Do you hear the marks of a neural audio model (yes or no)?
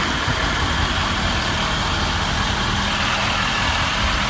no